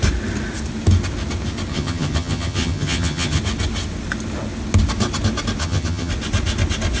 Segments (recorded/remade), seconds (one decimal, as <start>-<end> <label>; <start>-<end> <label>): 0.0-1.7 recorded; 1.7-3.4 remade; 3.4-5.6 recorded; 5.6-6.1 remade; 6.1-7.0 recorded